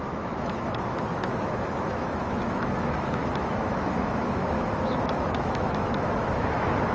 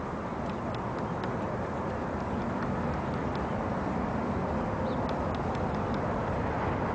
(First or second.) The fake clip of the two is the first